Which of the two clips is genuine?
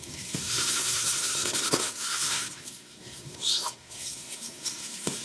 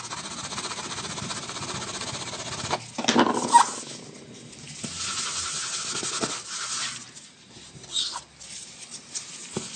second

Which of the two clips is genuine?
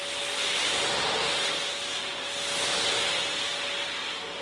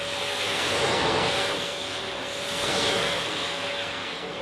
first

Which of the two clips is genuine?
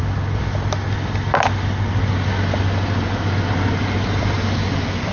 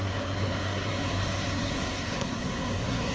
first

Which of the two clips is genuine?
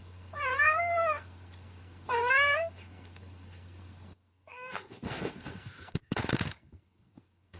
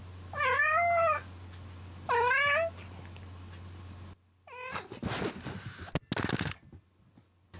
second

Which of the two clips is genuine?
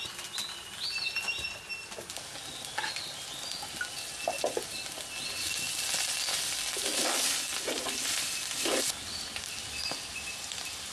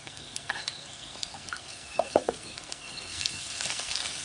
first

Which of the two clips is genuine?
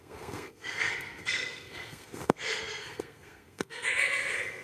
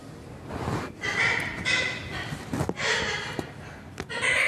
second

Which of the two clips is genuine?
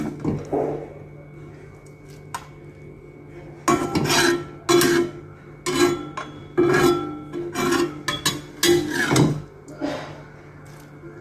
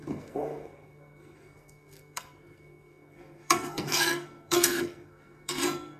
first